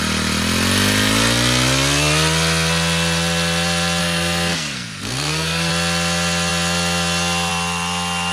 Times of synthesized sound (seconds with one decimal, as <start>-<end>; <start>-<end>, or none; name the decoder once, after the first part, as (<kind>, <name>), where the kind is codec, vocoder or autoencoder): 4.0-5.7 (codec, SNAC)